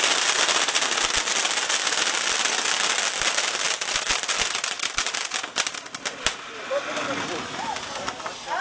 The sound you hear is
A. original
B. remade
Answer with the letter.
A